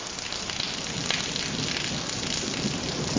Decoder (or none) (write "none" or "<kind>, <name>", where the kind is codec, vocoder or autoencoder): none